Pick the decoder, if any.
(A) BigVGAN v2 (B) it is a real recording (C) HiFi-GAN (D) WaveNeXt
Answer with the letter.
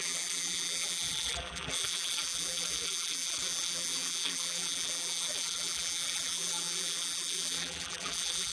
A